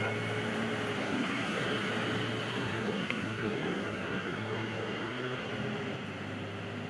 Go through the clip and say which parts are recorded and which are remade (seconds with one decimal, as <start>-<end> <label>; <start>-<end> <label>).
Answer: 0.0-1.0 recorded; 1.0-1.9 remade; 1.9-2.5 recorded; 2.5-5.5 remade; 5.5-6.9 recorded